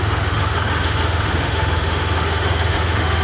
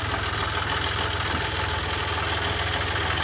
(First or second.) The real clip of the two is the second